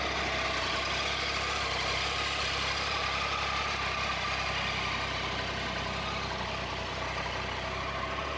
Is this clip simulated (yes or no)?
no